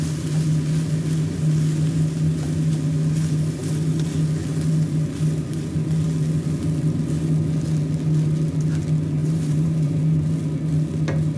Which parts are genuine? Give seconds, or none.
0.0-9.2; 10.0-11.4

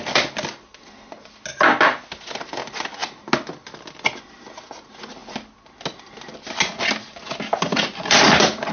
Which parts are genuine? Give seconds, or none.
0.0-8.7

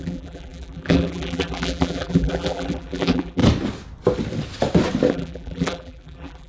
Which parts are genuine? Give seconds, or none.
3.4-5.1

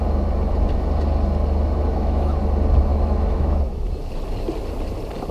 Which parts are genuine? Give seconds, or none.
0.0-1.9; 2.4-2.9; 4.0-5.3

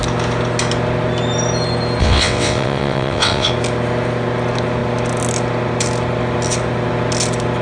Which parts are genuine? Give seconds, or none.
0.0-2.0; 3.5-7.6